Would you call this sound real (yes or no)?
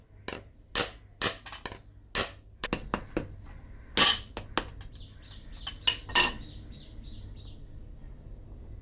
yes